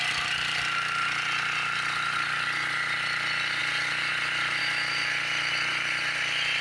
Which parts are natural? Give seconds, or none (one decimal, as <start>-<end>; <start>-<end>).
0.0-6.6